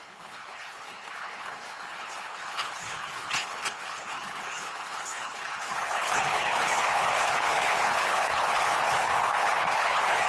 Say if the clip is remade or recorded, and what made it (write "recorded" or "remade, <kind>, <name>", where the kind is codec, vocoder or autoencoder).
remade, codec, HILCodec